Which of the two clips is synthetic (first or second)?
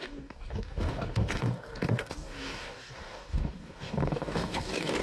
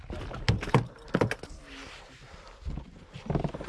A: first